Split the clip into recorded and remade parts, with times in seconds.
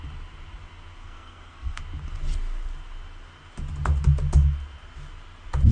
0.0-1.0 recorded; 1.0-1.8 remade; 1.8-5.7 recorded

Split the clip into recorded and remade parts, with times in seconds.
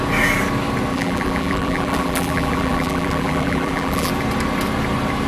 0.0-0.9 recorded; 0.9-4.1 remade; 4.1-5.3 recorded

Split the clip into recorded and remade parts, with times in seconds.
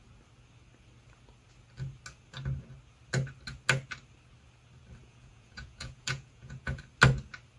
0.0-5.0 recorded; 5.0-6.8 remade; 6.8-7.6 recorded